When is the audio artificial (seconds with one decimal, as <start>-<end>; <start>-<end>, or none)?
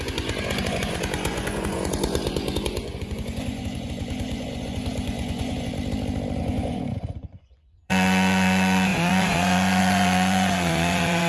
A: 0.0-5.7; 6.4-11.3